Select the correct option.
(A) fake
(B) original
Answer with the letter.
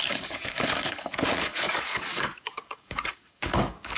A